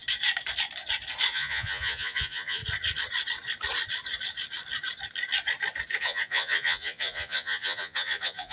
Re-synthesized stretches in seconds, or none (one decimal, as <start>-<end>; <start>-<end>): 1.3-2.6; 6.0-8.5